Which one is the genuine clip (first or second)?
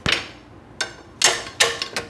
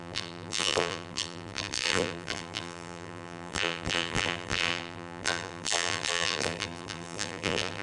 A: first